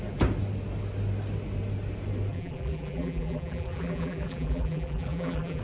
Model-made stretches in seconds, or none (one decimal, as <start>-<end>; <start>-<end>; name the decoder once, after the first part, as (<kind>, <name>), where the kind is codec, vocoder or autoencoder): 2.3-5.6 (vocoder, BigVGAN v2)